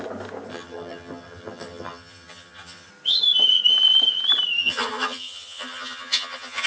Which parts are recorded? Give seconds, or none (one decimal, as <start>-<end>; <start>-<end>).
0.0-0.5; 2.9-4.6